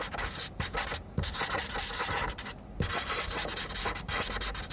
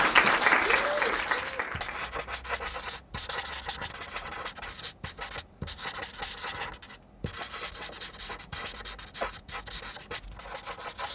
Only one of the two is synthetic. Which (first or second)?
first